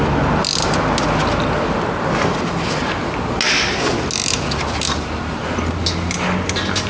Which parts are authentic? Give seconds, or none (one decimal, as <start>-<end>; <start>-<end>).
0.0-6.9